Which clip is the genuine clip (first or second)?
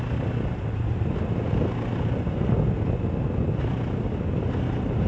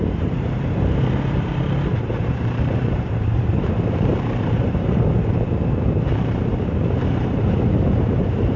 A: first